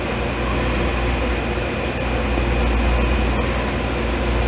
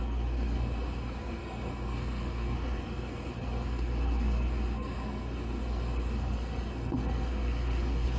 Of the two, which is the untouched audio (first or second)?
first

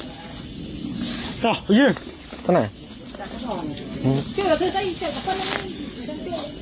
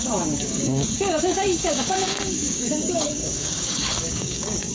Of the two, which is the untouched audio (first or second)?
first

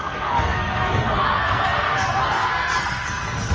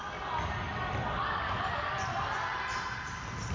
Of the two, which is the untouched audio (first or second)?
second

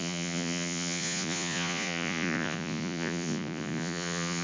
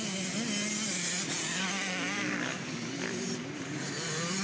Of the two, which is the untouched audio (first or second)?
second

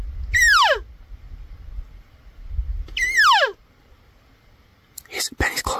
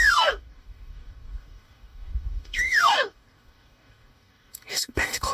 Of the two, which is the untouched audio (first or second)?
first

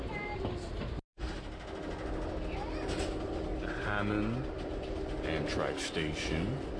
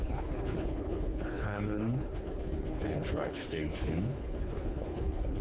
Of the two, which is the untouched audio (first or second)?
first